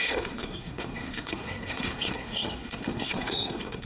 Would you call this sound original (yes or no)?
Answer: no